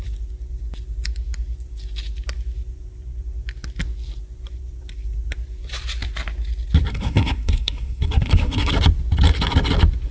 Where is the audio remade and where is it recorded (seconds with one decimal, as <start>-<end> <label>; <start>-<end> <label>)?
0.0-6.9 recorded; 6.9-8.7 remade; 8.7-10.1 recorded